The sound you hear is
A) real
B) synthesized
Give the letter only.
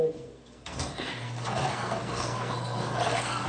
B